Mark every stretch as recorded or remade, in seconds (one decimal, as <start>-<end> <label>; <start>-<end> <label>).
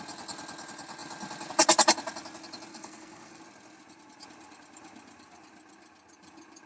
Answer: 0.0-2.7 recorded; 2.7-3.4 remade; 3.4-6.7 recorded